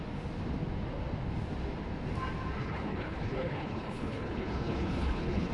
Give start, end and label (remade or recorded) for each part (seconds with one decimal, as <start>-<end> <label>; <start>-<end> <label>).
0.0-2.6 recorded; 2.6-5.5 remade